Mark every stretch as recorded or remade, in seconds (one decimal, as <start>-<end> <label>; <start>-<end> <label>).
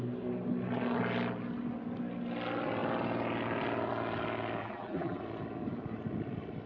0.0-4.6 recorded; 4.6-5.2 remade; 5.2-6.7 recorded